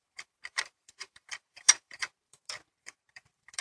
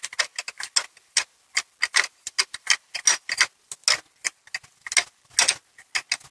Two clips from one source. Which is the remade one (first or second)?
first